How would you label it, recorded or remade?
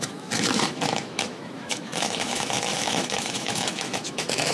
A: remade